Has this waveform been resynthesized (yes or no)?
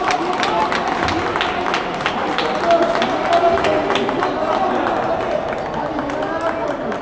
no